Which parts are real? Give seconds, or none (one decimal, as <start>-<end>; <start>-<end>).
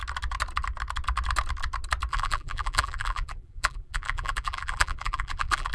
0.0-2.1